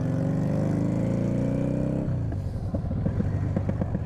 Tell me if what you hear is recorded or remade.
recorded